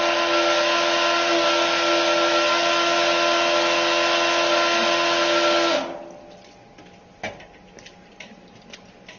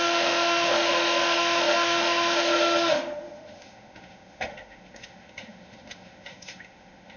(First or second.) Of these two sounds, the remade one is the second